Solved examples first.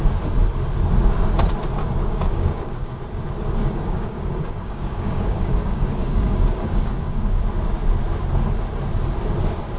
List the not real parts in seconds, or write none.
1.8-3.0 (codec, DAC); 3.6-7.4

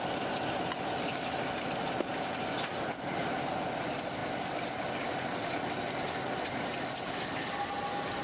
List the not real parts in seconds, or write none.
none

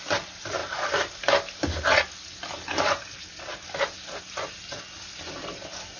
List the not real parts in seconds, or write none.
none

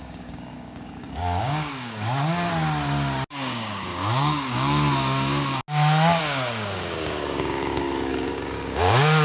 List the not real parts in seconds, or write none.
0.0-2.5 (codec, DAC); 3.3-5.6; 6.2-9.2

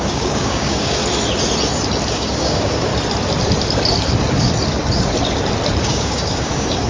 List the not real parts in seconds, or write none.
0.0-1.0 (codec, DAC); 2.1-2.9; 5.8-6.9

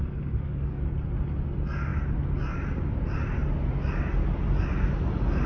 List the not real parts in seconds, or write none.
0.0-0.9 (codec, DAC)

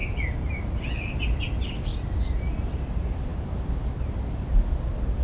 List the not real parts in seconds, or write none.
none